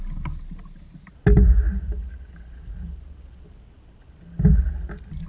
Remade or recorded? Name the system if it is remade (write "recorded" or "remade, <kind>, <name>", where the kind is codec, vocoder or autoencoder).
recorded